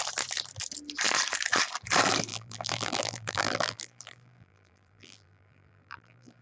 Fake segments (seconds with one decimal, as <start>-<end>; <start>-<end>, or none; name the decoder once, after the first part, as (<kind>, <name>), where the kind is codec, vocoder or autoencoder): 2.3-6.4 (vocoder, BigVGAN v2)